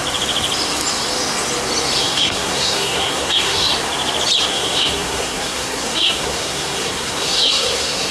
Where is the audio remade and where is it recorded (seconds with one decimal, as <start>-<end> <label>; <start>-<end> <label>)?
0.0-2.0 recorded; 2.0-3.7 remade; 3.7-4.5 recorded; 4.5-8.1 remade

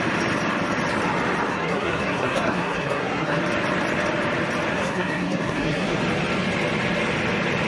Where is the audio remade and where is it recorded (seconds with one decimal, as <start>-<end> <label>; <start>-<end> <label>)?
0.0-1.5 recorded; 1.5-3.4 remade; 3.4-4.7 recorded; 4.7-6.0 remade; 6.0-7.7 recorded